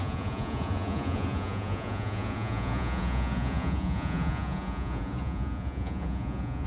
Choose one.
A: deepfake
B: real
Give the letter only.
A